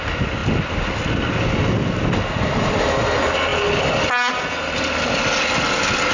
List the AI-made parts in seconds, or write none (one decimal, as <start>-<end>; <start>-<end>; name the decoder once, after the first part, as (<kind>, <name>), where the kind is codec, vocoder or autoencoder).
none